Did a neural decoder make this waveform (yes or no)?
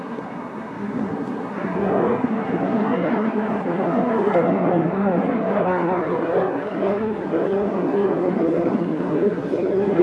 yes